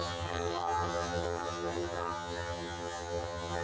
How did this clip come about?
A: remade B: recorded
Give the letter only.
A